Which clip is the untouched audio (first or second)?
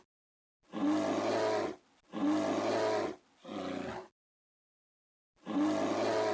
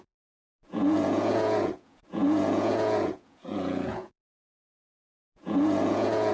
first